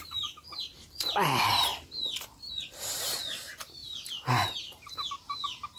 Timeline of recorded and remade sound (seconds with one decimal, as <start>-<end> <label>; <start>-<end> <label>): 0.0-5.8 recorded